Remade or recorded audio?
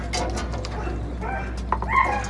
recorded